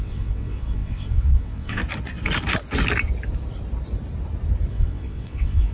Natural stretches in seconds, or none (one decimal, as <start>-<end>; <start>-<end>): 1.8-4.7